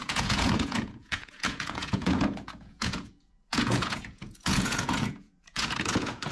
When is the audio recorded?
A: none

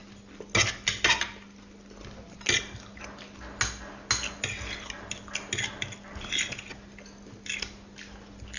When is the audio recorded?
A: 0.0-8.6

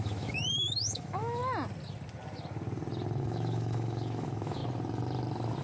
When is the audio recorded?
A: 1.4-3.2; 4.6-5.6

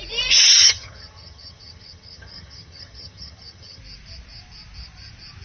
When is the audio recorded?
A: 0.0-0.6; 3.8-5.4